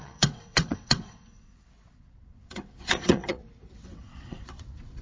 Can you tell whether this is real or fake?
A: fake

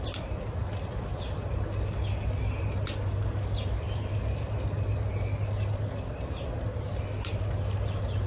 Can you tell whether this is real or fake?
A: real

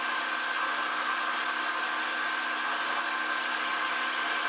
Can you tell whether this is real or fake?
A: real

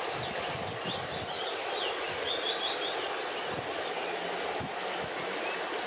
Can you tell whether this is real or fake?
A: real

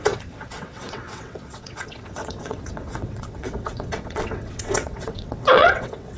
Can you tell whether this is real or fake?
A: fake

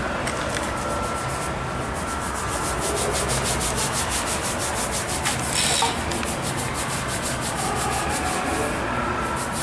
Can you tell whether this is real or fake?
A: real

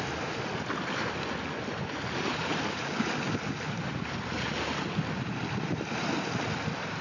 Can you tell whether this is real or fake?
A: real